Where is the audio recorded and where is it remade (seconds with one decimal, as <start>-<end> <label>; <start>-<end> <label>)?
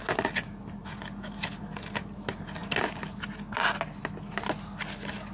0.0-5.3 recorded